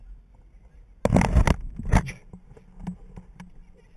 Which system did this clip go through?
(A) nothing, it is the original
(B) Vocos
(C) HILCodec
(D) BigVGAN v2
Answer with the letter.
A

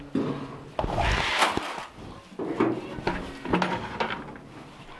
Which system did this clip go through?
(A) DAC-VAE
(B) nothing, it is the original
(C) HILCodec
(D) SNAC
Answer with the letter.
B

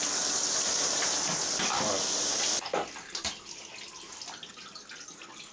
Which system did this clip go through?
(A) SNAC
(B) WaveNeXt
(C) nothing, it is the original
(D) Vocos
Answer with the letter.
C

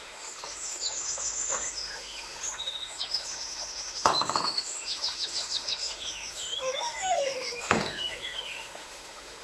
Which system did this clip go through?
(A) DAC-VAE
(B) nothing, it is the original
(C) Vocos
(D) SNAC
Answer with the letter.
A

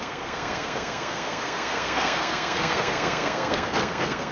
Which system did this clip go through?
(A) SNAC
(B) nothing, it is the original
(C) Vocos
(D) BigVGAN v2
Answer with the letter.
A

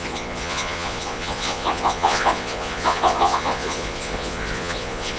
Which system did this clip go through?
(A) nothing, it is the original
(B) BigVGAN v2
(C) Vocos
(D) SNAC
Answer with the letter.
C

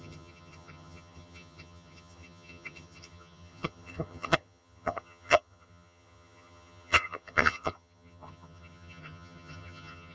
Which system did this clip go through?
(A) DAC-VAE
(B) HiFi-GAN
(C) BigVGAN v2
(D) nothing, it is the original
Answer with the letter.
B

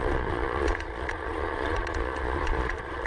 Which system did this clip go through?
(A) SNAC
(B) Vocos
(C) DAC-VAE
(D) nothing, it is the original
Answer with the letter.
B